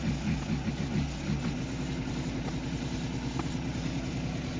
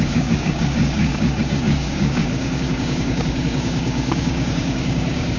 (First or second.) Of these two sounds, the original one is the first